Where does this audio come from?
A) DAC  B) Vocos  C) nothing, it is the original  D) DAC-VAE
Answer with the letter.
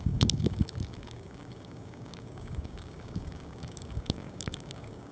A